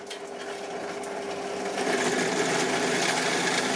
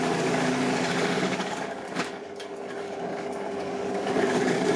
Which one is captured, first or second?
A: first